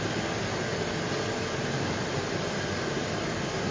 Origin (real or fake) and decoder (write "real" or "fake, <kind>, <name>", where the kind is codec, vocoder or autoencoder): real